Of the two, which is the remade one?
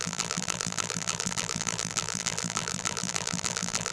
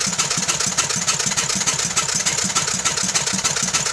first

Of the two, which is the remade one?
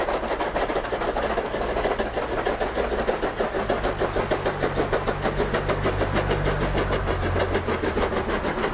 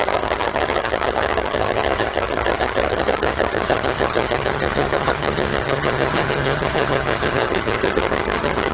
second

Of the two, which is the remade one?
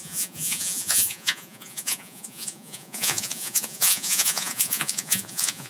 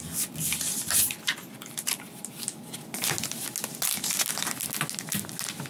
first